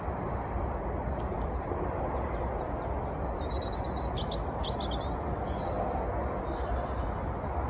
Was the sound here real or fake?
real